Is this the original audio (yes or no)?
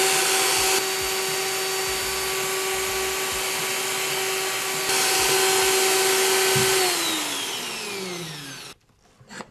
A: yes